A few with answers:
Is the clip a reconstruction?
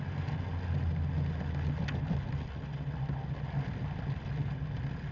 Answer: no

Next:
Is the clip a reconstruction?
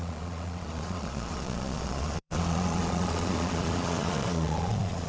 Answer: yes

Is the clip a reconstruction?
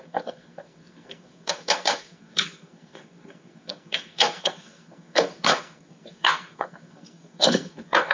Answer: yes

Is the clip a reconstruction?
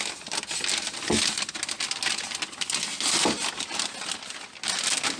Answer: no